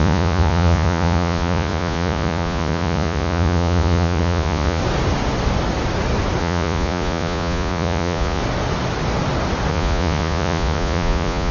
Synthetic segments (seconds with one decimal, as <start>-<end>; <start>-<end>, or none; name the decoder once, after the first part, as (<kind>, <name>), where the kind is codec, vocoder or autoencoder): 0.0-4.8 (vocoder, Vocos); 6.4-8.4; 9.7-11.5